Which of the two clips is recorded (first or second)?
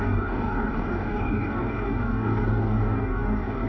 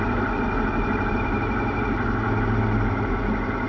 second